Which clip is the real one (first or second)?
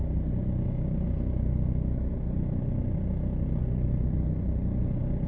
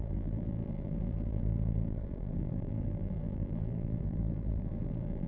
first